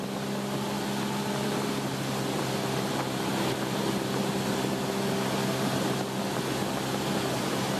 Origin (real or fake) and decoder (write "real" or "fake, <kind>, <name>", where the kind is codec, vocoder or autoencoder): real